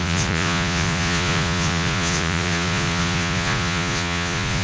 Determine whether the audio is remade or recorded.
remade